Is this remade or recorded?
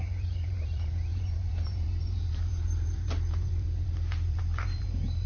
remade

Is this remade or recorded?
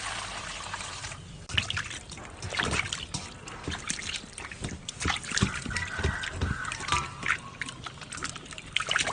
recorded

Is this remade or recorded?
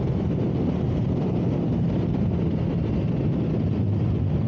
recorded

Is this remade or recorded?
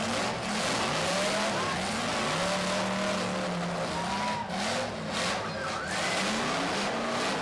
recorded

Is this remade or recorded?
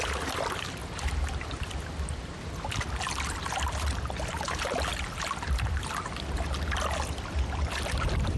recorded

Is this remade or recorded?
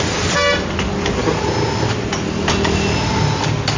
recorded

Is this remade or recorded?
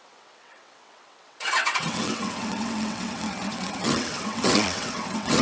remade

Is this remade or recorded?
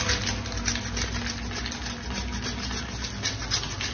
recorded